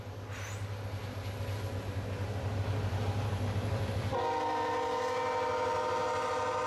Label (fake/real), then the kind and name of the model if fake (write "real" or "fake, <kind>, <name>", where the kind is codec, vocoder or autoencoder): real